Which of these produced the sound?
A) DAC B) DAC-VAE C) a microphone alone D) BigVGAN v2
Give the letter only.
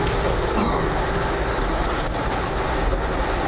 C